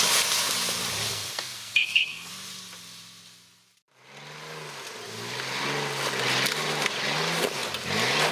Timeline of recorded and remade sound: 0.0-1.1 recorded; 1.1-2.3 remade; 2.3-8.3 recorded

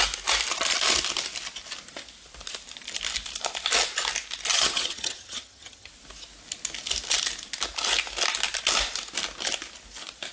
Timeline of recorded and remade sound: 0.0-4.5 recorded; 4.5-5.9 remade; 5.9-10.3 recorded

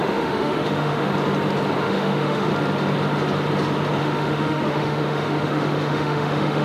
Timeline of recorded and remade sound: 0.0-1.1 remade; 1.1-1.8 recorded; 1.8-2.5 remade; 2.5-4.0 recorded; 4.0-6.6 remade